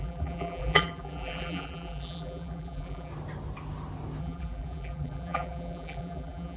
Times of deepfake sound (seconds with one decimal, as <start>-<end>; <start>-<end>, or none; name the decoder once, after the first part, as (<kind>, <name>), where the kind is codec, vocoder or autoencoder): 0.0-3.1 (vocoder, BigVGAN v2); 4.2-6.6